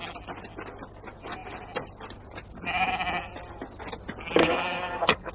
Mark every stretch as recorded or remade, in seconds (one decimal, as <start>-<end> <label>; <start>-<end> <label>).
0.0-4.4 recorded; 4.4-5.3 remade